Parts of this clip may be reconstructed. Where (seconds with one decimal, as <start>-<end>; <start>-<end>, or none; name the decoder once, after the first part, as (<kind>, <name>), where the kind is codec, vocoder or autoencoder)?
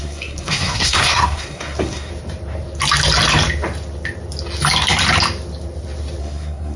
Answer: 0.0-2.1 (codec, SNAC); 6.2-6.8